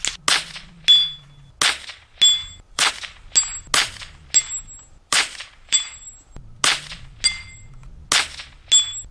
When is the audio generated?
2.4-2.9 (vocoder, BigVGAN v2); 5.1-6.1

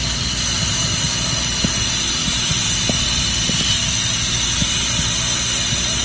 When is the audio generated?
none

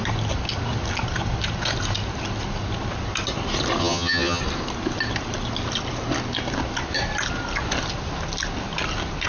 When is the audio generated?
3.8-4.4 (vocoder, HiFi-GAN)

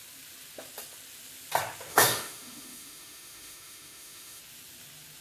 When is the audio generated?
1.9-4.4 (autoencoder, DAC-VAE)

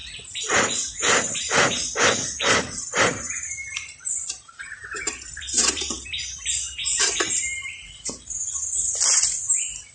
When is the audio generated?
0.6-9.9 (vocoder, BigVGAN v2)

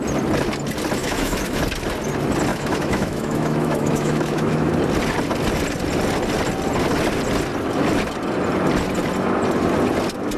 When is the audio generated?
1.0-1.6 (autoencoder, DAC-VAE); 2.5-4.7

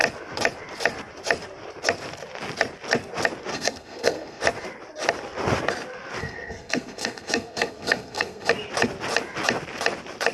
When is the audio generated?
3.5-4.4 (codec, SNAC); 6.2-8.5

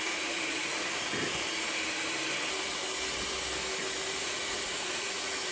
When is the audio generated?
0.0-1.1 (vocoder, Vocos); 4.2-5.5